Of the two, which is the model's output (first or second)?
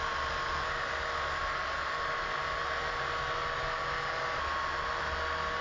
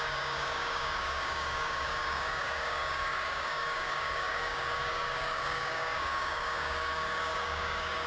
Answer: second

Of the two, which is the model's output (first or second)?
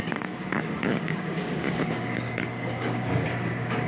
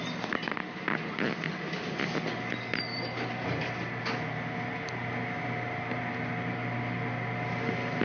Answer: first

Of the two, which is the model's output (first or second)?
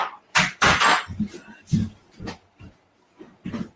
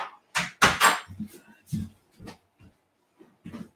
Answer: first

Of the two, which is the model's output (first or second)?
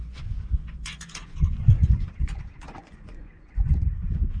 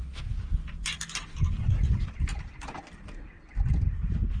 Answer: first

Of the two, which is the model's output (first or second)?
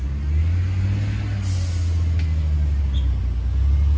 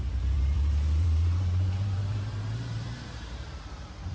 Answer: second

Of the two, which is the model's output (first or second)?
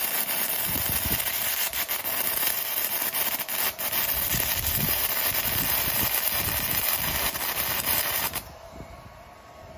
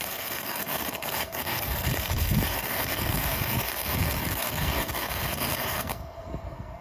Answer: second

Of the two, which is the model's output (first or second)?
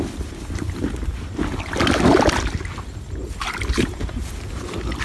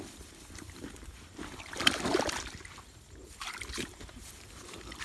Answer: second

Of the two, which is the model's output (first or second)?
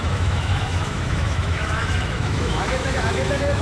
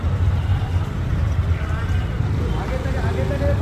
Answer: first